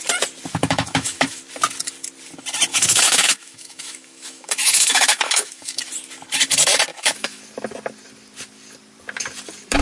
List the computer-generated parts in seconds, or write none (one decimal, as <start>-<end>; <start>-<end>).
0.6-1.4; 2.7-5.8; 6.9-7.4